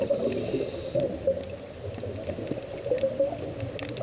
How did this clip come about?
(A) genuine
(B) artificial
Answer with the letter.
A